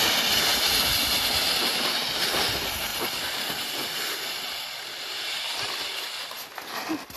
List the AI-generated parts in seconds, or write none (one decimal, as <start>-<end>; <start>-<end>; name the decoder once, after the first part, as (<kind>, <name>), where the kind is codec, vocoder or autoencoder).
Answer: none